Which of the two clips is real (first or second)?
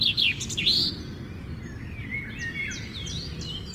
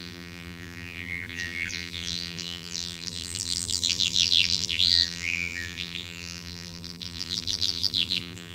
first